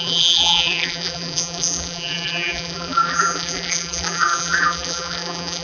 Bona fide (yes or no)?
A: no